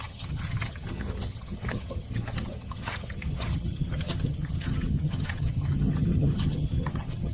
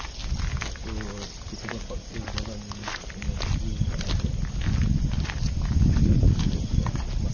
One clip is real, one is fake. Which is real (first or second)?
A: second